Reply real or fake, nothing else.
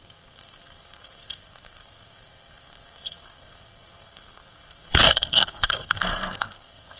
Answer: fake